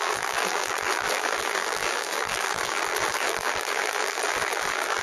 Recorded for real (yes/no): no